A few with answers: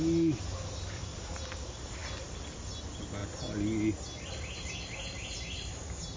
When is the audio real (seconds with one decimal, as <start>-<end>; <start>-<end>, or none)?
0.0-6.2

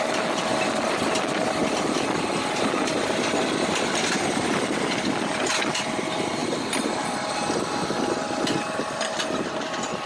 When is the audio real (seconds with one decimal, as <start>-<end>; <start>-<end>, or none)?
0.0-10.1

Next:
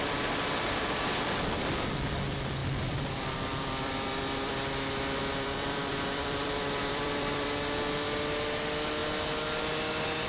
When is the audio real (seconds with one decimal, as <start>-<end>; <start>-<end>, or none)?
0.0-2.6; 4.2-5.2; 7.5-10.3